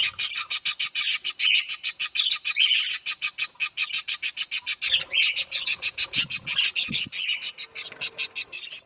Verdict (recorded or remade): recorded